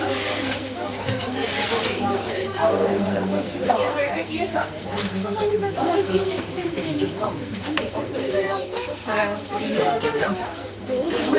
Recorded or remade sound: remade